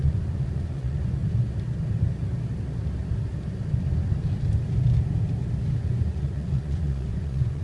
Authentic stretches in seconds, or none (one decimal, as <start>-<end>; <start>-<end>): 1.2-5.8